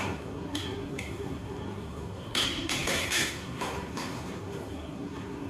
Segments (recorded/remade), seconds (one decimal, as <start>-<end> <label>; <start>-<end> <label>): 0.0-5.5 remade